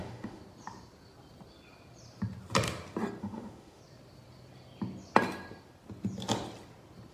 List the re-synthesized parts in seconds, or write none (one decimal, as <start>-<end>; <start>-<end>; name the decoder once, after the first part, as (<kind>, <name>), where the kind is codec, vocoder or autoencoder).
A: 0.0-0.4 (autoencoder, DAC-VAE); 3.2-3.8